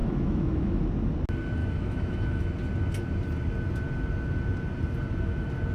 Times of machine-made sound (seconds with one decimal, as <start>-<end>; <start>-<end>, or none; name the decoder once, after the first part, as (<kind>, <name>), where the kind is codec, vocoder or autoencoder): 0.0-0.8 (autoencoder, DAC-VAE); 1.6-2.4